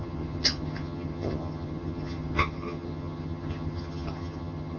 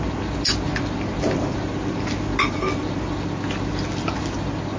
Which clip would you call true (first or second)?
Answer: second